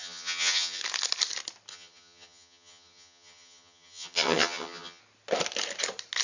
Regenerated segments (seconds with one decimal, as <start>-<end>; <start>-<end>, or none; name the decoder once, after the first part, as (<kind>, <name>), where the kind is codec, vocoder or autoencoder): 0.0-0.8 (vocoder, HiFi-GAN); 1.7-5.0